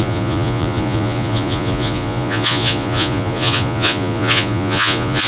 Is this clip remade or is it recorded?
remade